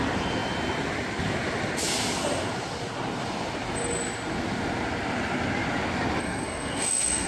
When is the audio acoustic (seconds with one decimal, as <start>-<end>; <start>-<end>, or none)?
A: 0.0-6.2